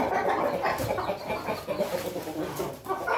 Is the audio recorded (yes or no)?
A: yes